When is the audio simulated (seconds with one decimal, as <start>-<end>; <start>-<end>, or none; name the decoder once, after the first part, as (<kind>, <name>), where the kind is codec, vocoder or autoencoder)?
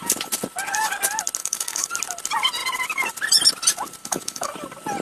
1.4-1.9 (codec, DAC); 4.0-4.5